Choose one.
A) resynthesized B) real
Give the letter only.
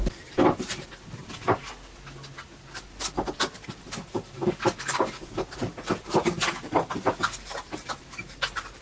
B